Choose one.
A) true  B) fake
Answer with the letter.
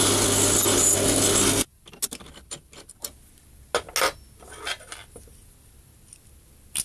A